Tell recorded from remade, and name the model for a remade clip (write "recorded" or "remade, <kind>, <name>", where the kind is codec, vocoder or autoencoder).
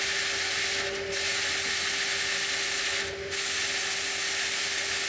recorded